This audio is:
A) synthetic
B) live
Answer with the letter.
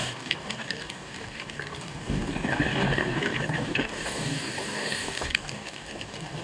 A